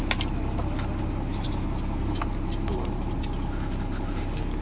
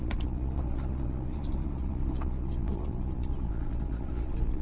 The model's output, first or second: second